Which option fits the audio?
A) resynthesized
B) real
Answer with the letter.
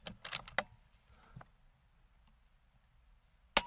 B